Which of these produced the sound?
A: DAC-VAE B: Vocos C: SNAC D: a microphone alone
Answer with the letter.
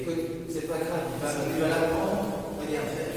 D